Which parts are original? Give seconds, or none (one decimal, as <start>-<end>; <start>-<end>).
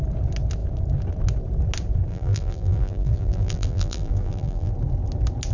0.0-2.1; 4.7-5.5